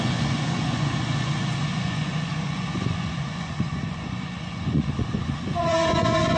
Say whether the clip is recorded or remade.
remade